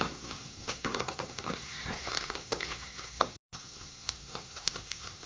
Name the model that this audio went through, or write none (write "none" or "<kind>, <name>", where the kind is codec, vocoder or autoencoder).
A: codec, SNAC